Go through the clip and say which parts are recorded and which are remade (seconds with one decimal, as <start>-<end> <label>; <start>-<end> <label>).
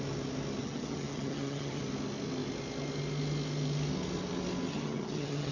0.0-0.6 recorded; 0.6-1.8 remade; 1.8-4.7 recorded; 4.7-5.5 remade